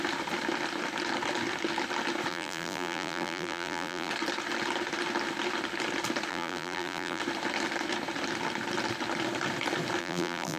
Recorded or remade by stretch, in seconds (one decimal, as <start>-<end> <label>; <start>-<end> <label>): 0.0-2.3 recorded; 2.3-4.1 remade; 4.1-6.3 recorded; 6.3-7.2 remade; 7.2-10.0 recorded; 10.0-10.6 remade